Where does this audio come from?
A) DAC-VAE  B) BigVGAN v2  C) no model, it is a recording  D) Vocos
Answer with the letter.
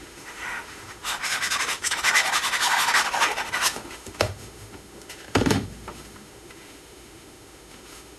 A